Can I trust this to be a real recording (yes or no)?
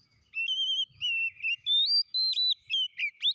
yes